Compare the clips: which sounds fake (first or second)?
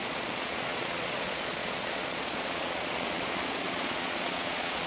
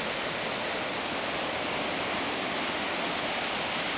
first